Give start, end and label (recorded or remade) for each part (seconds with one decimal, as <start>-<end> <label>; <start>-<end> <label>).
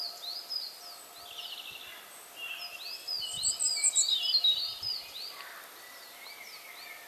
0.0-7.1 recorded